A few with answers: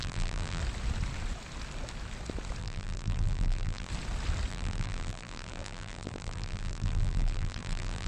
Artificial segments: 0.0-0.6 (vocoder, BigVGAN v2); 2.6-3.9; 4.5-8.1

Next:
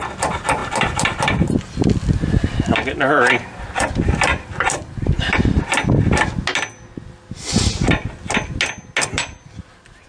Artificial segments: 0.6-3.9 (vocoder, BigVGAN v2); 4.3-5.3

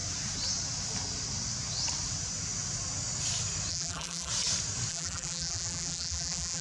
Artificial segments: 3.7-4.3 (vocoder, BigVGAN v2); 4.9-6.6

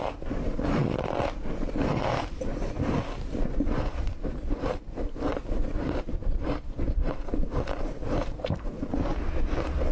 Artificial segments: 0.0-9.9 (vocoder, BigVGAN v2)

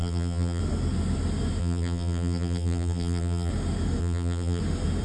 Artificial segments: 0.0-0.6 (vocoder, BigVGAN v2); 1.6-3.5; 4.0-4.6

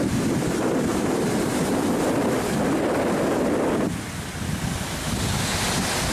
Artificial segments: 0.9-1.6 (vocoder, BigVGAN v2)